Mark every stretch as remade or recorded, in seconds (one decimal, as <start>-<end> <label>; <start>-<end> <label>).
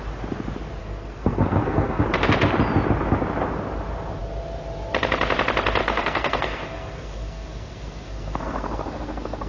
0.0-0.8 recorded; 0.8-2.0 remade; 2.0-5.8 recorded; 5.8-9.5 remade